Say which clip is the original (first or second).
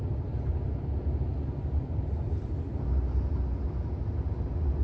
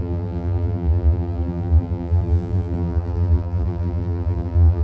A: first